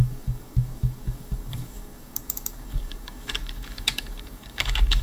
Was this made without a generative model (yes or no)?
no